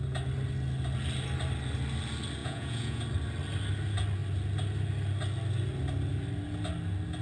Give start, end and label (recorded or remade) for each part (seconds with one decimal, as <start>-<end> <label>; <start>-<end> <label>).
0.0-2.4 recorded; 2.4-3.0 remade; 3.0-7.2 recorded